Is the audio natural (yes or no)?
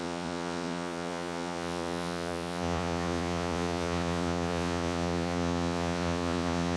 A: no